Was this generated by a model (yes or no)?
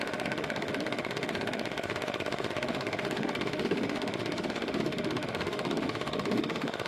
yes